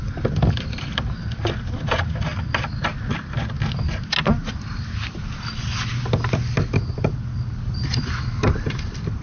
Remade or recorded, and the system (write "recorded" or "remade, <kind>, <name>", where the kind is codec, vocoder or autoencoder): recorded